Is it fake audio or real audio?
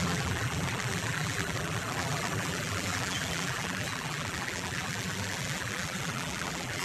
fake